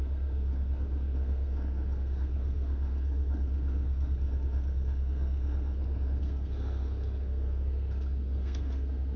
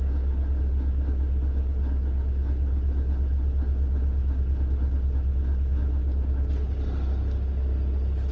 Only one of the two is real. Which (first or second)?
second